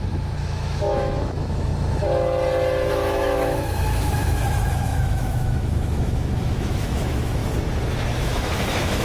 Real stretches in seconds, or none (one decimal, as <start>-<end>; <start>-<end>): 1.7-2.9; 7.4-8.2